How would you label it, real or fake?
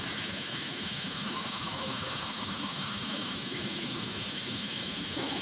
fake